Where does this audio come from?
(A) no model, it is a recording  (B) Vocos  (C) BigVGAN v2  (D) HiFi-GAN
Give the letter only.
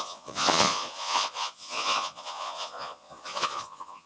B